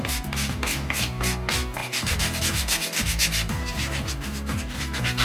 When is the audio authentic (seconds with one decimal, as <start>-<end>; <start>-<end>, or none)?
none